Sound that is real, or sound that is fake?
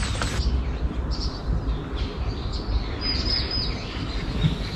real